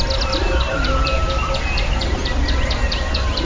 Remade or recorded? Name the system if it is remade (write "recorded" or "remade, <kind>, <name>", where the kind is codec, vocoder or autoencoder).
recorded